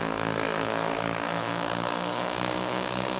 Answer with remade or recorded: remade